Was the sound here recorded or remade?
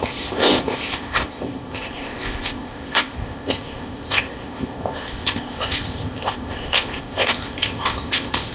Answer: remade